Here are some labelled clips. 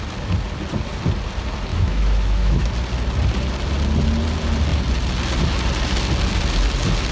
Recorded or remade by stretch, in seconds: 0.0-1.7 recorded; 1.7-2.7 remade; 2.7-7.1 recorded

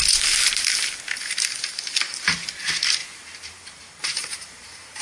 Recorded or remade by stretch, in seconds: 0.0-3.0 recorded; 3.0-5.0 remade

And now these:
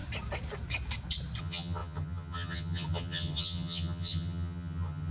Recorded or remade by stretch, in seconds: 0.0-1.4 recorded; 1.4-5.1 remade

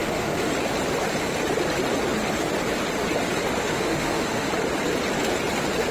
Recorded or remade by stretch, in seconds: 0.0-0.5 remade; 0.5-3.6 recorded; 3.6-4.5 remade; 4.5-5.9 recorded

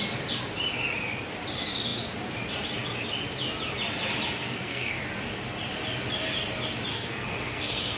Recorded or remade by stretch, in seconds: 0.0-4.4 recorded; 4.4-5.0 remade; 5.0-6.9 recorded; 6.9-8.0 remade